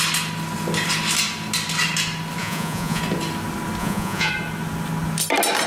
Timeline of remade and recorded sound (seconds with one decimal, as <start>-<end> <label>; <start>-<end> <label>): 0.0-2.4 recorded; 2.4-3.0 remade; 3.0-3.8 recorded; 3.8-4.3 remade; 4.3-5.7 recorded